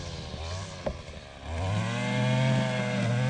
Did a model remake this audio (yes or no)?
no